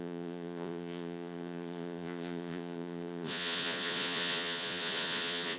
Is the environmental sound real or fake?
fake